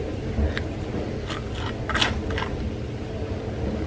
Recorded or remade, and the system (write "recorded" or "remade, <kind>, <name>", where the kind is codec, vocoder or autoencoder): recorded